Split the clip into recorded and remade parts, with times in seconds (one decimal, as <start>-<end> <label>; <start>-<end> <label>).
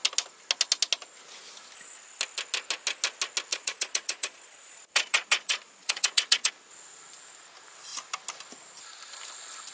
0.0-3.5 recorded; 3.5-6.5 remade; 6.5-9.7 recorded